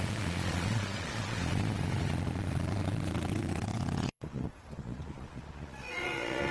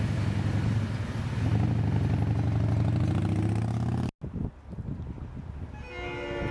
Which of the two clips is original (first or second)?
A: second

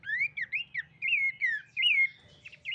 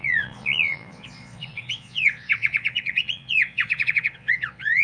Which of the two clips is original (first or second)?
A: first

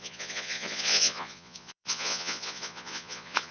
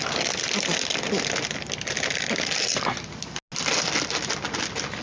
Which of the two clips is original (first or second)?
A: second